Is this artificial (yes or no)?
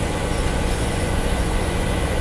yes